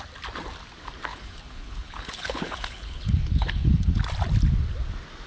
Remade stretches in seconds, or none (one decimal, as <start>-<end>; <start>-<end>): 1.1-4.0